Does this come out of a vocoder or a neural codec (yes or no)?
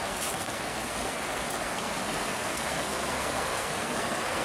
yes